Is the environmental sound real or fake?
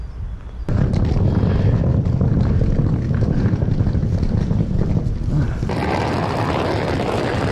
real